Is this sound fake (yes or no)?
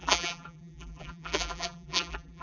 yes